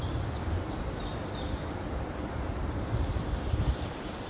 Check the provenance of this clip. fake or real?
real